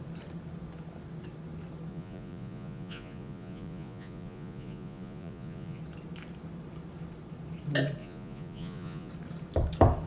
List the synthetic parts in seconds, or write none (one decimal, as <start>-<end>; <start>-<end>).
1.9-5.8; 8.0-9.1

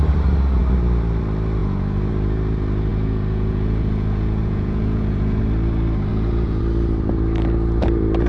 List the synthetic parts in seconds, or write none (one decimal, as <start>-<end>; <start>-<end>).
1.6-2.1; 2.9-5.4; 6.1-6.6

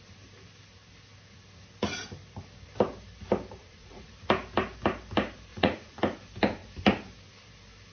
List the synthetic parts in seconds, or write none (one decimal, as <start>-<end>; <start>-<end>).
3.6-4.1; 5.5-6.0

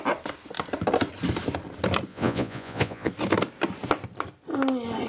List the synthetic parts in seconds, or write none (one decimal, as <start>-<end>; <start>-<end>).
2.1-3.1